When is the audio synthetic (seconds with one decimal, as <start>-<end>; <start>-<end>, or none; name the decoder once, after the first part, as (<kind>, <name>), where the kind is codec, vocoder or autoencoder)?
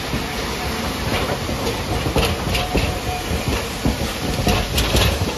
none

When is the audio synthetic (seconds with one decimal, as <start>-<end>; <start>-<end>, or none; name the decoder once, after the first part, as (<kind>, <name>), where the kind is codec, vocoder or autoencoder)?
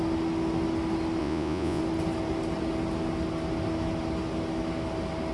1.2-1.8 (vocoder, Vocos)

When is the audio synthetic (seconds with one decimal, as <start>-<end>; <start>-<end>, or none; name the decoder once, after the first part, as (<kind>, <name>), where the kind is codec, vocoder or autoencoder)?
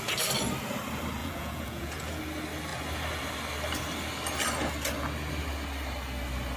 1.2-2.2 (vocoder, Vocos)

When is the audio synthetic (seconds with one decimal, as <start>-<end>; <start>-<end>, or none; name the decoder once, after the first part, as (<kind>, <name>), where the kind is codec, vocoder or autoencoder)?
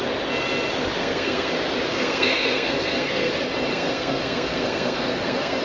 1.0-1.5 (codec, SNAC); 1.9-3.3; 3.7-5.6